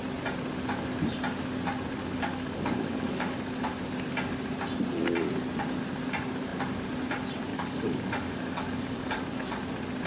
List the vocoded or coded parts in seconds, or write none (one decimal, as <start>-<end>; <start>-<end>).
2.0-3.7; 7.5-9.5